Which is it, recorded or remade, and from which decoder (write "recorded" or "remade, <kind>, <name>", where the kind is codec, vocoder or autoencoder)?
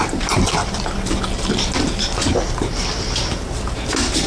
recorded